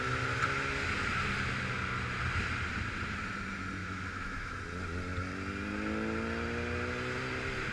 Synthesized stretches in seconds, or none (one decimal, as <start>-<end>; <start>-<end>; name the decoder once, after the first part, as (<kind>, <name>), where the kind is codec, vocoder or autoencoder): 3.8-4.6 (autoencoder, DAC-VAE)

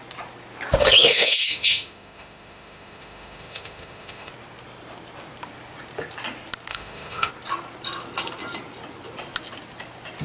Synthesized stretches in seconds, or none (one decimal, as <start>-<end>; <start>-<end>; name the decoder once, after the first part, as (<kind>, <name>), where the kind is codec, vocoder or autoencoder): 0.8-4.3 (autoencoder, DAC-VAE); 6.7-7.3

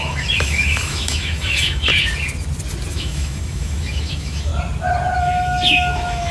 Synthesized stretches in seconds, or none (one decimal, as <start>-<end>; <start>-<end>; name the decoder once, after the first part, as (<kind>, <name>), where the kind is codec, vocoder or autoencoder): 0.0-1.9 (autoencoder, DAC-VAE); 2.9-4.5; 5.2-6.3

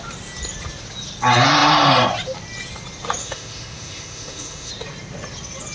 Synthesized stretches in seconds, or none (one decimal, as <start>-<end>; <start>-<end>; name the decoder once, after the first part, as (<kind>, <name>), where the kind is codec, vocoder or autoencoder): 3.2-4.7 (autoencoder, DAC-VAE)

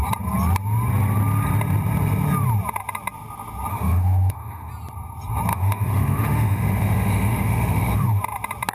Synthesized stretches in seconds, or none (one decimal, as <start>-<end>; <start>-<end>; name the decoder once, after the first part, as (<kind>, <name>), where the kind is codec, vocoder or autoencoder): 3.7-4.7 (autoencoder, DAC-VAE); 5.5-8.2